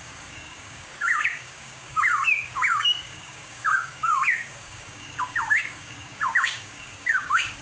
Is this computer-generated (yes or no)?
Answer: yes